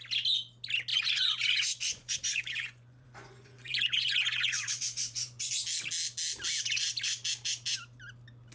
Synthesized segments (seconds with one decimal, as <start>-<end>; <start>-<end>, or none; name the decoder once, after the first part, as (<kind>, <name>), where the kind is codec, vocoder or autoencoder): 0.9-5.5 (vocoder, Vocos)

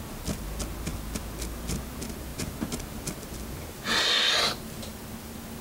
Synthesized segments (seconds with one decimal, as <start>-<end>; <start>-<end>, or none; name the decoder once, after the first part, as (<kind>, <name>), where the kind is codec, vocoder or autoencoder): none